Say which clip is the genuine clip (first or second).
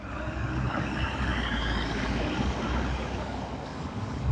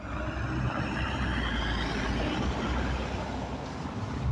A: second